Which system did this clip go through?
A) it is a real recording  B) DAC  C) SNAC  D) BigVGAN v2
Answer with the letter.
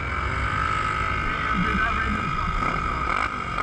D